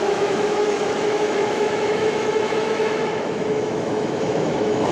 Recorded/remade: remade